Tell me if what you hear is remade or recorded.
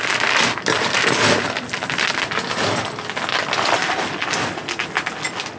recorded